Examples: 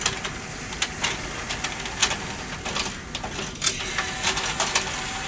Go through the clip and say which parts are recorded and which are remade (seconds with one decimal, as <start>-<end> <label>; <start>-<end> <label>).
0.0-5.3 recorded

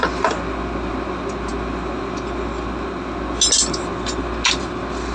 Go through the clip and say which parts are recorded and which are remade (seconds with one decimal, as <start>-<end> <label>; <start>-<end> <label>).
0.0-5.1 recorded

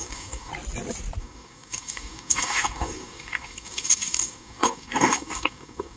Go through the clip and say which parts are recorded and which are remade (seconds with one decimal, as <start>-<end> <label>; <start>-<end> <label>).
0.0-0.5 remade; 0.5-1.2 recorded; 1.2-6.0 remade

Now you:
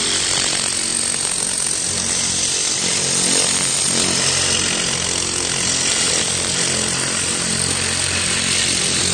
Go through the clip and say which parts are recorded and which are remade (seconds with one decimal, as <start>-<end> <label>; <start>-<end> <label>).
0.0-9.1 recorded

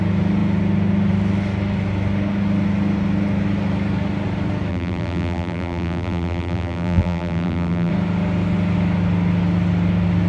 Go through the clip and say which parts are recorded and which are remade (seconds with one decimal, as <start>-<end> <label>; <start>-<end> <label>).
0.0-4.7 recorded; 4.7-7.9 remade; 7.9-10.3 recorded

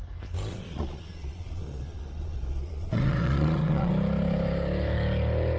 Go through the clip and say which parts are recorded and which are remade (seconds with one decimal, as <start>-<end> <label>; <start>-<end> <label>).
0.0-0.5 recorded; 0.5-3.9 remade; 3.9-5.6 recorded